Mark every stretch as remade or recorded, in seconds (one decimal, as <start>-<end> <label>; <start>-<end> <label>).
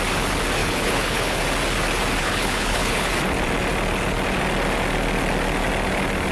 0.0-0.6 recorded; 0.6-1.4 remade; 1.4-2.2 recorded; 2.2-3.1 remade; 3.1-6.3 recorded